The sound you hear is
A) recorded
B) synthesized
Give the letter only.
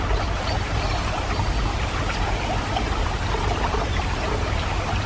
A